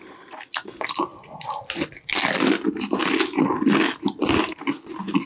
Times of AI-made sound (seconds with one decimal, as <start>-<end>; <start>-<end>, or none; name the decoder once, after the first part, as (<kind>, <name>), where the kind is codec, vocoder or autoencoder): none